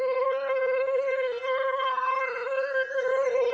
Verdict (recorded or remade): remade